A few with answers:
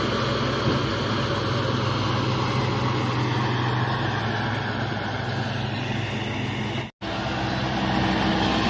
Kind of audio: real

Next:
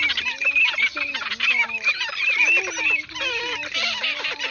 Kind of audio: real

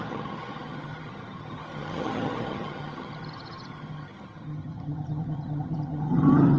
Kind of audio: fake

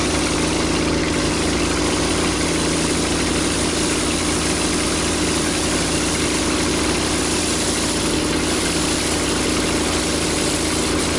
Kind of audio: real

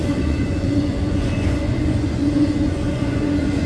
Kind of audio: fake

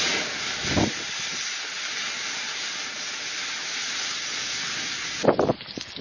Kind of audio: real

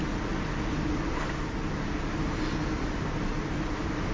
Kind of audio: real